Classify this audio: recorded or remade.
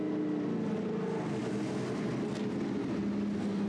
recorded